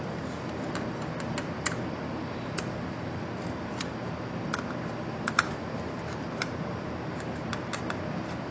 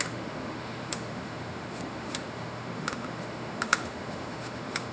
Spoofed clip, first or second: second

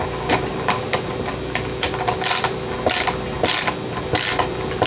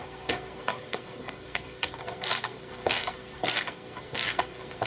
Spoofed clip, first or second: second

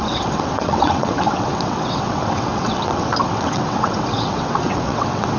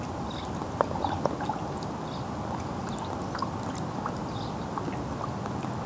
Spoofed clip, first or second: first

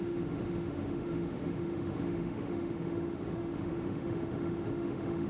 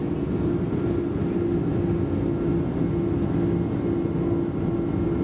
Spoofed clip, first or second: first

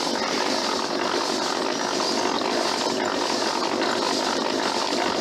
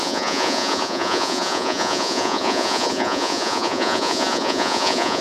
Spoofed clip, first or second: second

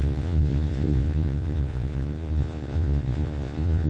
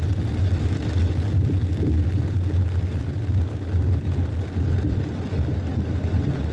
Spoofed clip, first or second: first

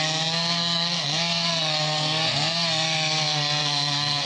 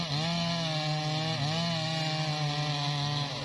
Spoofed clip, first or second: first